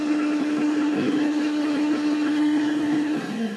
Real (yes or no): no